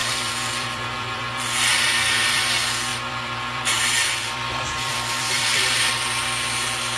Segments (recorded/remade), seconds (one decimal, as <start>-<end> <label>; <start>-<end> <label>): 0.0-2.4 remade; 2.4-2.9 recorded; 2.9-5.9 remade; 5.9-7.0 recorded